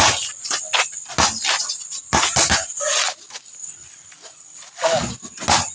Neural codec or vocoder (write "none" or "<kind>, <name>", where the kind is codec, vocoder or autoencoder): none